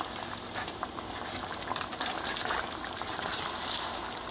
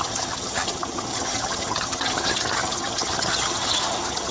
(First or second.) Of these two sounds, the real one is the first